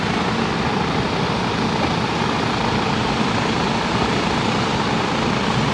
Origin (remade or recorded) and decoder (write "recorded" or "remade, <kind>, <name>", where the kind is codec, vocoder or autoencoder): recorded